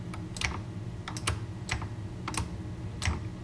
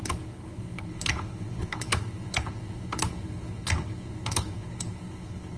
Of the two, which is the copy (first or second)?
second